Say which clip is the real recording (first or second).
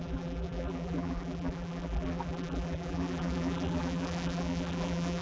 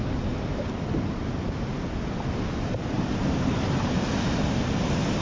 second